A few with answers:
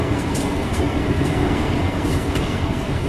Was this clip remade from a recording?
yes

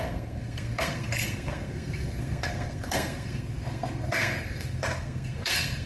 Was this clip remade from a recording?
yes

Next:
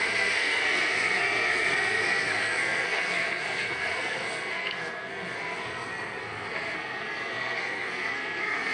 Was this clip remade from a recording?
yes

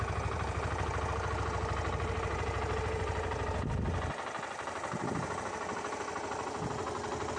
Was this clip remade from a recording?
no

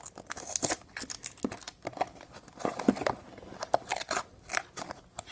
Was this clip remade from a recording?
no